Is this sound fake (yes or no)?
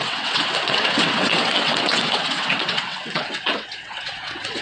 yes